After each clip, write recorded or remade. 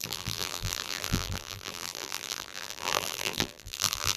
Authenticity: remade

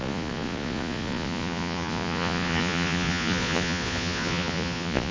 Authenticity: remade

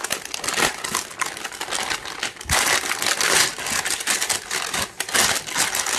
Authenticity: recorded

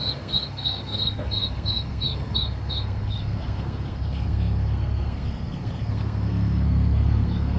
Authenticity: remade